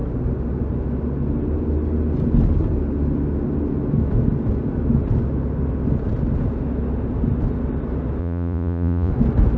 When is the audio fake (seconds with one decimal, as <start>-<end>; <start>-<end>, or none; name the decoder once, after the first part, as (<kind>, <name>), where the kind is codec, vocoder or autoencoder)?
8.2-9.1 (vocoder, Vocos)